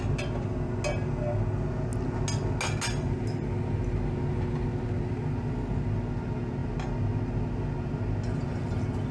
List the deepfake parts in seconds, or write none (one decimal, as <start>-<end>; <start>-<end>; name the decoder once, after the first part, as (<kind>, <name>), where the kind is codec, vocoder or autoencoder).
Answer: none